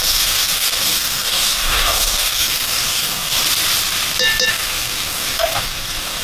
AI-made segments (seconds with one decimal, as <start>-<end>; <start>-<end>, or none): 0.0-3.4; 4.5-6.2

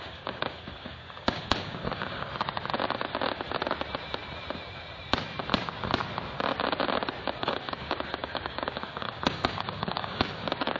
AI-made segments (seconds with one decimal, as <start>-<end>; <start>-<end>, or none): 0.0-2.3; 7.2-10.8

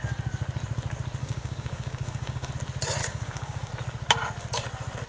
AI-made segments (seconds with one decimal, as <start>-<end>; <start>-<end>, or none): 1.2-2.5; 3.0-3.7

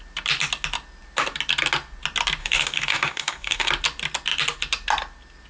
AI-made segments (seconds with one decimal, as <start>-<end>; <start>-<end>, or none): 2.4-3.7